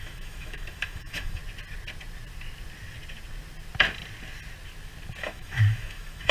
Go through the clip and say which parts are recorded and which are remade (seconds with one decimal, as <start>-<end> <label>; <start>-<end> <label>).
0.0-1.4 remade; 1.4-5.2 recorded; 5.2-6.3 remade